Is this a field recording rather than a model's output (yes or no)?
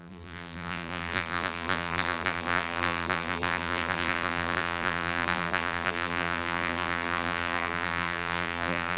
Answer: no